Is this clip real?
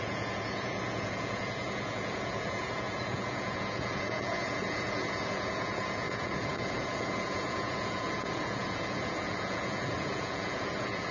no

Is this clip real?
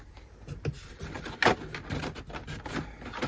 yes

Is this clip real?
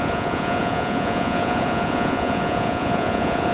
no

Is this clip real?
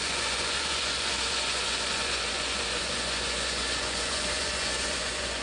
no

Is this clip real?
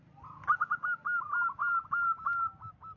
yes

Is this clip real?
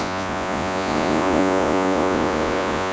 no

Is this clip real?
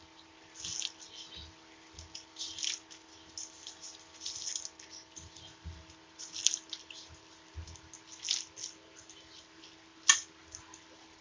yes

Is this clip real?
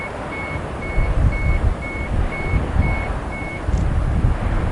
yes